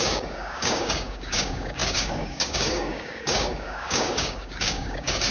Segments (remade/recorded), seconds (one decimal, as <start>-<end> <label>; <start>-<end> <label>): 0.0-5.3 remade